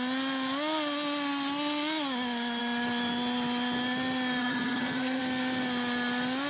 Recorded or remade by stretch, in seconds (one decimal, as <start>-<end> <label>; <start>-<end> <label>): 0.0-4.4 recorded; 4.4-5.2 remade; 5.2-6.5 recorded